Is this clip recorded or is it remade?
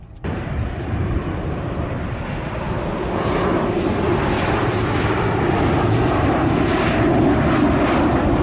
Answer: remade